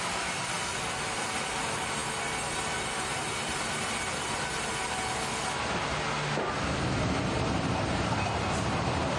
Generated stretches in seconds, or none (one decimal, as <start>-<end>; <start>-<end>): none